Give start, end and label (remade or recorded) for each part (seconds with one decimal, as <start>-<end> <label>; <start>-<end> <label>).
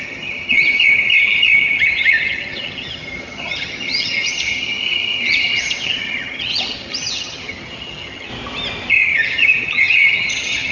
0.0-8.3 remade; 8.3-8.9 recorded; 8.9-10.7 remade